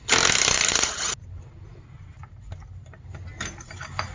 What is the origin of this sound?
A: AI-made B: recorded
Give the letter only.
B